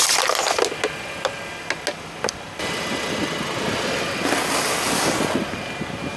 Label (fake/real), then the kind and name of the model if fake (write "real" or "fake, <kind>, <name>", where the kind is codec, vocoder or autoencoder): real